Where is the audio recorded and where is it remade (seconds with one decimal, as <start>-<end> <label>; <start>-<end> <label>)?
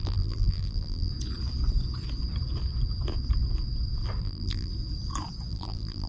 0.0-1.1 remade; 1.1-4.2 recorded; 4.2-4.7 remade; 4.7-5.5 recorded; 5.5-6.1 remade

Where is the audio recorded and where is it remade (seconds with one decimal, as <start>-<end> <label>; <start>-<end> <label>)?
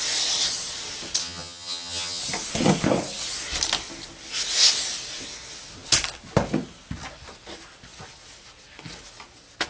0.0-1.2 recorded; 1.2-2.2 remade; 2.2-9.7 recorded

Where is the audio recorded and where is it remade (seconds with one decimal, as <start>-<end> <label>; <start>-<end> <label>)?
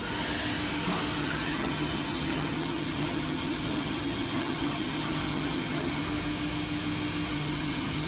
0.0-1.2 recorded; 1.2-6.0 remade; 6.0-7.3 recorded; 7.3-8.1 remade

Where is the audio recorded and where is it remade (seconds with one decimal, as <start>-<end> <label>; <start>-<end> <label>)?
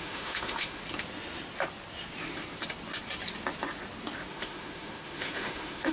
0.0-0.8 remade; 0.8-4.3 recorded; 4.3-5.9 remade